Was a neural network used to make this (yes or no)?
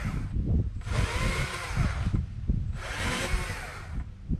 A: no